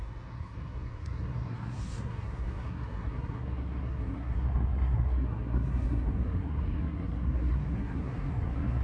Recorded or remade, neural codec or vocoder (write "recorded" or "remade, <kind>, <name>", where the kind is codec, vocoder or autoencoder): remade, codec, SNAC